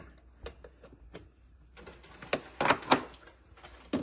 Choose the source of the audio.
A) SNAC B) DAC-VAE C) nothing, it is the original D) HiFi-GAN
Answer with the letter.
C